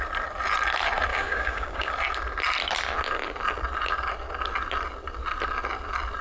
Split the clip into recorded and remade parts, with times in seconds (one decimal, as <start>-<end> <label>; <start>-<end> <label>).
0.0-1.1 recorded; 1.1-1.9 remade; 1.9-6.2 recorded